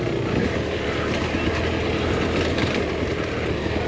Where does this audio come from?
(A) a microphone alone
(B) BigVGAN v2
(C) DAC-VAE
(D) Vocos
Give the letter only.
A